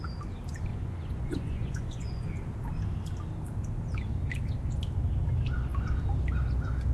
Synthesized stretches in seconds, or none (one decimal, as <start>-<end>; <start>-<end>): 0.7-2.3